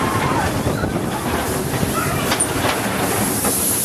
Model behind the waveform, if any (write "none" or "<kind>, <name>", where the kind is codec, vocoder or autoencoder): none